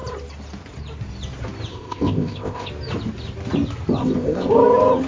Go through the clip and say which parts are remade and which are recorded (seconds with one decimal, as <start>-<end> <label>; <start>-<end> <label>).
0.0-1.7 recorded; 1.7-2.7 remade; 2.7-4.0 recorded; 4.0-4.5 remade; 4.5-5.1 recorded